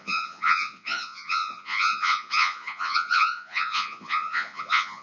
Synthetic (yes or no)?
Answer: yes